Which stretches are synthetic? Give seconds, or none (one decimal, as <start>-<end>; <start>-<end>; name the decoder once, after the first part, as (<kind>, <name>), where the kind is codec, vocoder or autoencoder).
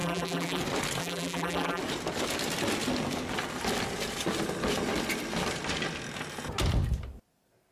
0.0-0.6 (vocoder, BigVGAN v2); 1.0-1.8